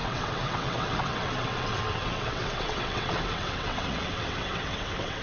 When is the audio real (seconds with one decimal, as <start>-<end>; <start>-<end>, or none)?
none